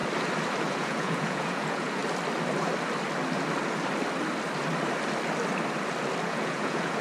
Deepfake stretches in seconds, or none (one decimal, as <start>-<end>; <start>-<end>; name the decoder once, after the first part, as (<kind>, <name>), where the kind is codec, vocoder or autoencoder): 0.7-2.0 (vocoder, Vocos); 6.2-7.0